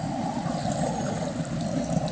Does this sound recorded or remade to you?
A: recorded